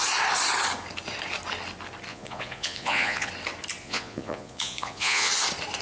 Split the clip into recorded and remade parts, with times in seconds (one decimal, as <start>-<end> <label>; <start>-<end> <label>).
0.0-2.1 recorded; 2.1-3.3 remade; 3.3-3.8 recorded; 3.8-5.3 remade; 5.3-5.8 recorded